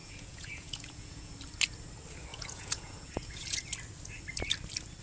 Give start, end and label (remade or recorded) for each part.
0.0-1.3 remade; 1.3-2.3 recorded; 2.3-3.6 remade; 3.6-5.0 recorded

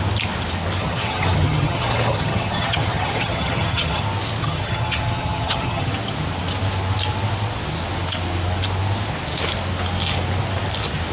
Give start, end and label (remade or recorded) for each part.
0.0-0.8 recorded; 0.8-4.0 remade; 4.0-4.4 recorded; 4.4-5.9 remade; 5.9-11.1 recorded

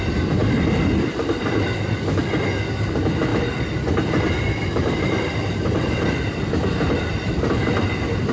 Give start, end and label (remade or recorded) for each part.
0.0-0.4 recorded; 0.4-2.3 remade; 2.3-3.3 recorded; 3.3-7.5 remade; 7.5-8.3 recorded

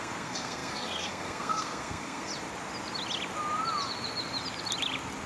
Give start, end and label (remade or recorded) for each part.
0.0-2.3 remade; 2.3-5.3 recorded